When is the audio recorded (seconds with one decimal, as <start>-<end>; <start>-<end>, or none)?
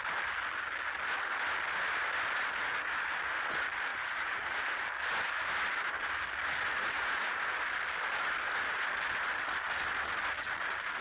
0.0-3.9; 4.8-6.7; 7.6-11.0